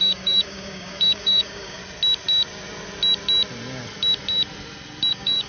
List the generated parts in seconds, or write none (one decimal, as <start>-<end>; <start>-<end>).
0.0-1.8; 5.1-5.5